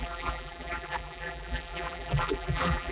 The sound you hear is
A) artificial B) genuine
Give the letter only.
A